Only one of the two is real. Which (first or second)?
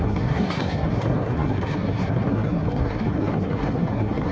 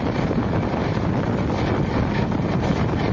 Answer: second